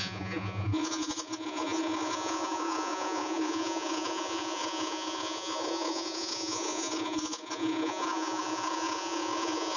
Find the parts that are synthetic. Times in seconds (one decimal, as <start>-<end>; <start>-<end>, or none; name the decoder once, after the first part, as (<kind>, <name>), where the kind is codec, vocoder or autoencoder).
0.0-9.8 (vocoder, Vocos)